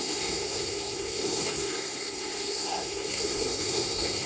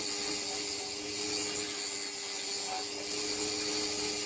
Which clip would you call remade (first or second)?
first